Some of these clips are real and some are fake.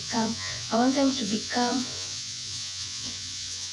fake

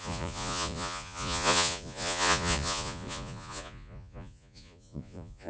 fake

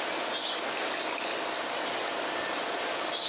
real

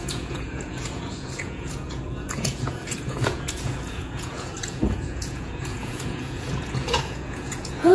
fake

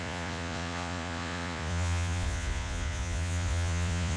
fake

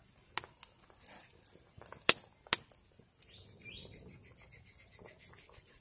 real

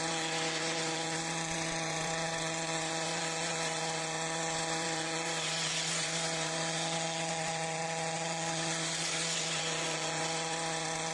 fake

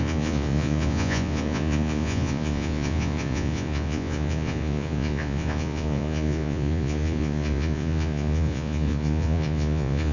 fake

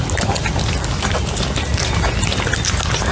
real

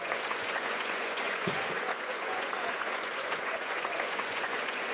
fake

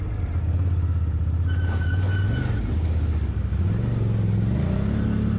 real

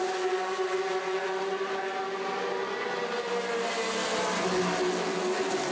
real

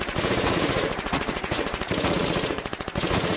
fake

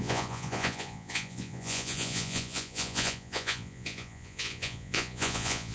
fake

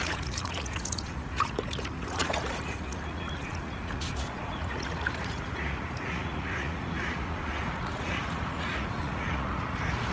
fake